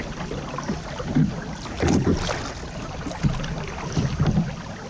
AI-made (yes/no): no